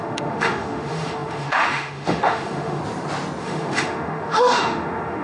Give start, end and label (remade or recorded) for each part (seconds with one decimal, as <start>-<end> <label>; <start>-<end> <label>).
0.0-2.8 remade; 2.8-3.4 recorded; 3.4-5.2 remade